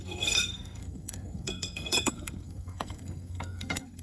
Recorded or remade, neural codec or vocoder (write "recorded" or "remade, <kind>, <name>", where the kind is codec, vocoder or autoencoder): remade, codec, SNAC